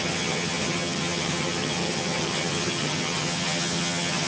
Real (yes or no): no